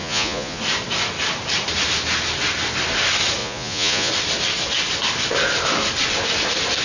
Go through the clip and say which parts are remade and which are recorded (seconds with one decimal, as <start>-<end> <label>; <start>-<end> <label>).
0.0-0.6 remade; 0.6-3.4 recorded; 3.4-4.1 remade; 4.1-6.8 recorded